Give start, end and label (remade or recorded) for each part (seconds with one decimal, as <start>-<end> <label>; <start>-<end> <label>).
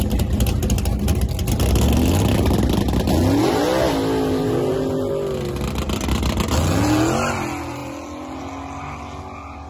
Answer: 0.0-9.7 recorded